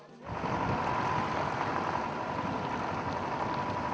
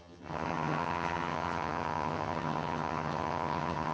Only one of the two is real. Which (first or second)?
first